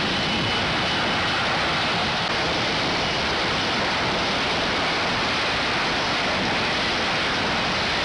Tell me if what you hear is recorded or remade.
recorded